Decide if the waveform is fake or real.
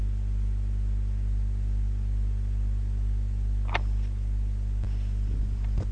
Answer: real